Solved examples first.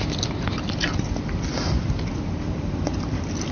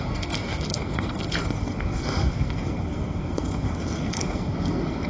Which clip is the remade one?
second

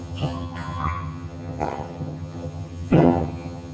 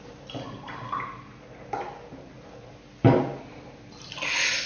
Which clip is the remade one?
first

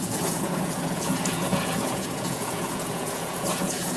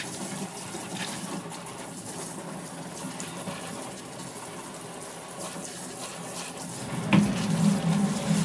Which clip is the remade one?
first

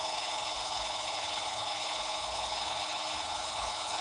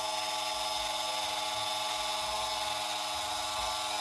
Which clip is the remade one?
first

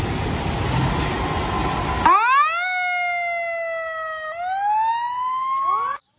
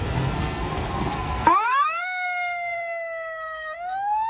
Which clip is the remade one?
second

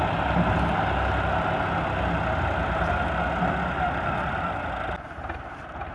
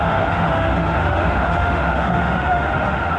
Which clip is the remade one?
second